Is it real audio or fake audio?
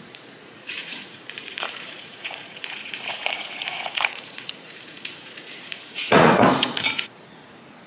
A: fake